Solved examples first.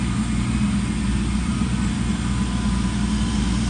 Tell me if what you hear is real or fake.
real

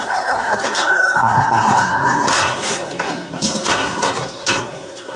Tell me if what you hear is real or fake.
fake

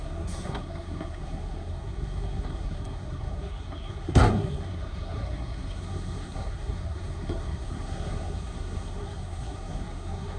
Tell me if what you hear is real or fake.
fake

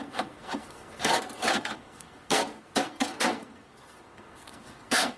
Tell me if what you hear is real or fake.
fake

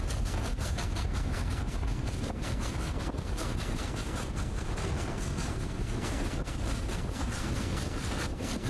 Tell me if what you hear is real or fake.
fake